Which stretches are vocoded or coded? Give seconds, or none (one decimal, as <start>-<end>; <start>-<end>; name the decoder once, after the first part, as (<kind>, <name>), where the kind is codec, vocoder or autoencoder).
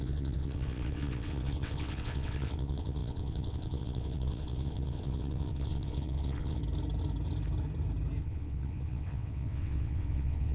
0.0-6.6 (vocoder, WaveNeXt); 8.2-10.5